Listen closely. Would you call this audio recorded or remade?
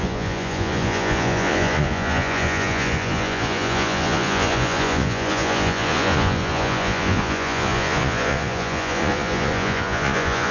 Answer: remade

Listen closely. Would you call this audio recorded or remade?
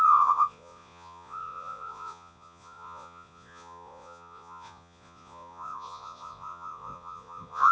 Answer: remade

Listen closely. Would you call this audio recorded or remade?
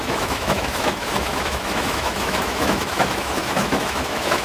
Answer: remade